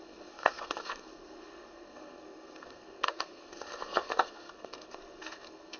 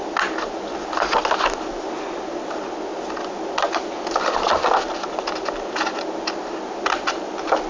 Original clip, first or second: second